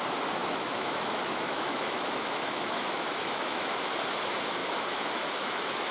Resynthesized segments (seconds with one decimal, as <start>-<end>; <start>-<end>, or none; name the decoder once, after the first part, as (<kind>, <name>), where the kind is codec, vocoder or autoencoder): 0.4-3.9 (autoencoder, DAC-VAE); 4.6-5.9